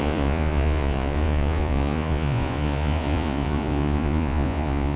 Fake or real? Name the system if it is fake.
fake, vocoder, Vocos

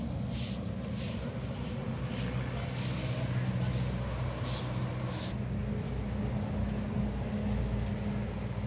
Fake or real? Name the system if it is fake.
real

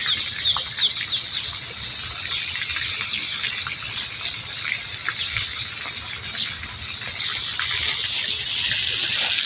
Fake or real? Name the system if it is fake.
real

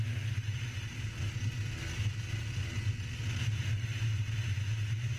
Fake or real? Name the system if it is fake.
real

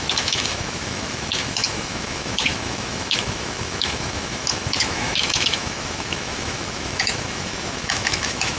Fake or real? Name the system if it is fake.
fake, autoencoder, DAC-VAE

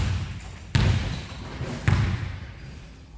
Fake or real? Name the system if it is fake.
real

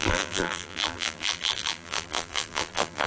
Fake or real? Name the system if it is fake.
fake, vocoder, BigVGAN v2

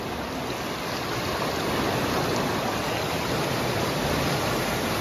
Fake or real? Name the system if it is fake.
real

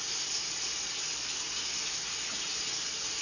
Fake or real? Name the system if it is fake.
real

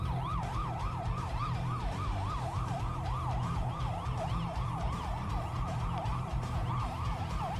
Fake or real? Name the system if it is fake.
fake, vocoder, BigVGAN v2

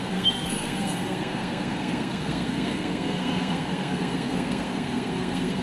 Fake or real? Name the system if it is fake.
fake, codec, SNAC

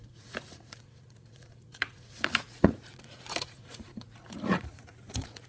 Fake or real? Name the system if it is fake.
fake, vocoder, Vocos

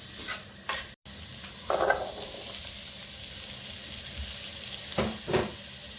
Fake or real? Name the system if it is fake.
real